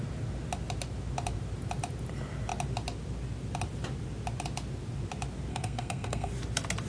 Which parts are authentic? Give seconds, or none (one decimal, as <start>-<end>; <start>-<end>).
0.0-5.5; 6.3-6.9